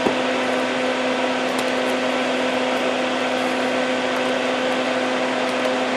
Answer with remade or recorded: recorded